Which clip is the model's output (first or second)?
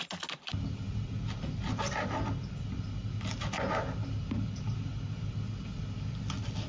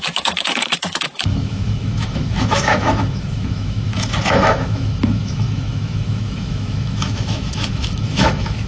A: second